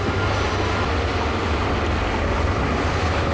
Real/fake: real